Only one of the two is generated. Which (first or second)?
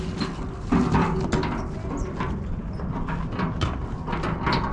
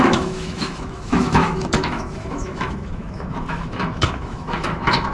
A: second